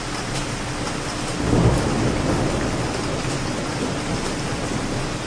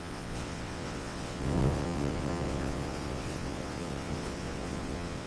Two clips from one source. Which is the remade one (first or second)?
second